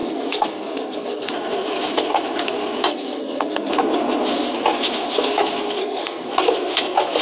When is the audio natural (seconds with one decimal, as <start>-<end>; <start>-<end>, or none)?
1.3-2.9; 3.7-5.8; 6.3-7.2